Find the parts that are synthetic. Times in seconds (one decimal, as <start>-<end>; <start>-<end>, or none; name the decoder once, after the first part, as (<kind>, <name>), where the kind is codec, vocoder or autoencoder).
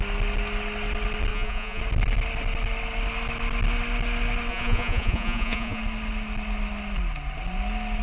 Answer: 1.3-1.8 (vocoder, Vocos); 4.5-5.8